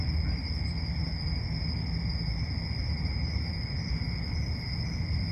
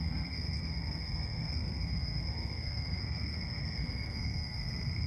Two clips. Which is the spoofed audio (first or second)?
second